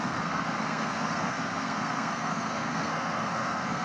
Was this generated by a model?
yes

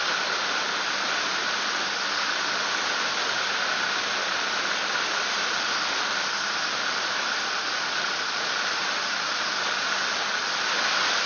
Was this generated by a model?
no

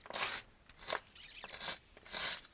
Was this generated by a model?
no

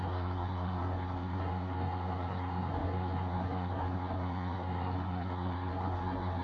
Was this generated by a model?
yes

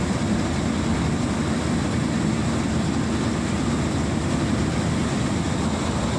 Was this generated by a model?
no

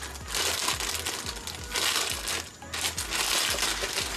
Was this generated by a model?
no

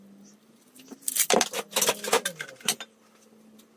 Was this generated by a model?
no